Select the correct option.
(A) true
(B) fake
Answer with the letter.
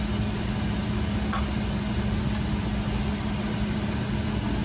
A